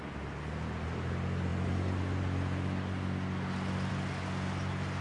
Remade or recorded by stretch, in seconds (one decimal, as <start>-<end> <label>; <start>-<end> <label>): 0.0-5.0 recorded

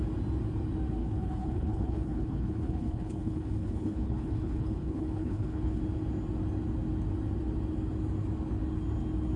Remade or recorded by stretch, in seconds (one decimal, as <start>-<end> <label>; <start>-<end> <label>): 0.0-1.0 recorded; 1.0-5.8 remade; 5.8-9.4 recorded

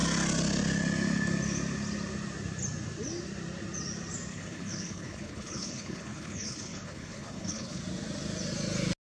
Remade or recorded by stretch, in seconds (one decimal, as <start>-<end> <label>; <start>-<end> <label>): 0.0-4.3 recorded; 4.3-7.8 remade; 7.8-9.2 recorded

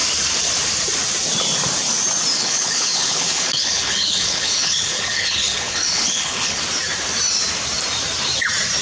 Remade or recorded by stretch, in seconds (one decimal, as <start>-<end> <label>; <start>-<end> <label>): 0.0-2.3 recorded; 2.3-6.6 remade; 6.6-8.8 recorded